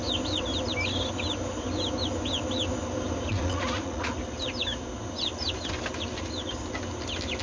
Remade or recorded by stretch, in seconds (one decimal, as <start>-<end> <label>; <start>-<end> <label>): 0.0-3.3 recorded; 3.3-4.1 remade; 4.1-7.4 recorded